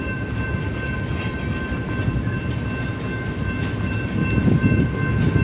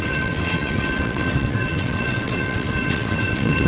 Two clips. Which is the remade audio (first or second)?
second